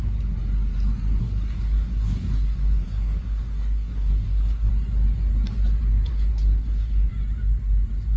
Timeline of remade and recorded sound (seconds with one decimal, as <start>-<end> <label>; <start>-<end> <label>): 0.0-1.2 recorded; 1.2-4.7 remade; 4.7-6.1 recorded; 6.1-7.1 remade; 7.1-8.2 recorded